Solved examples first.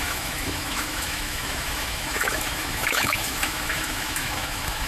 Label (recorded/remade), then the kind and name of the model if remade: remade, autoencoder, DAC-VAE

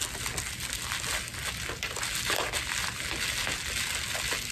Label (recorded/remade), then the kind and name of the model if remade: recorded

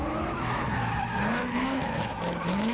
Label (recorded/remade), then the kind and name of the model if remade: remade, autoencoder, DAC-VAE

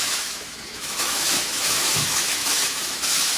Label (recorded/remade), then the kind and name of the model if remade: remade, autoencoder, DAC-VAE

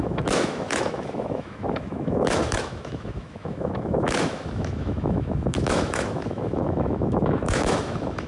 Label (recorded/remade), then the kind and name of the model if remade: remade, autoencoder, DAC-VAE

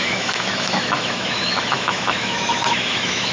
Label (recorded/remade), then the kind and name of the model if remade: remade, autoencoder, DAC-VAE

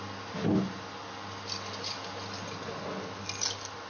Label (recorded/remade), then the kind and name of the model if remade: recorded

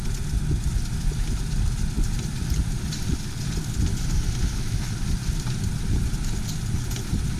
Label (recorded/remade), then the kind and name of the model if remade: recorded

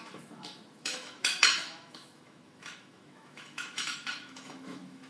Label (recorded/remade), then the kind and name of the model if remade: remade, autoencoder, DAC-VAE